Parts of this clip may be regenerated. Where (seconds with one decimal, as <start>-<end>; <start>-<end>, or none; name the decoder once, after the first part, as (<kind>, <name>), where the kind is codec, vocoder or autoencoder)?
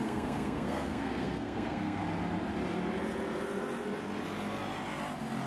0.0-2.0 (codec, SNAC)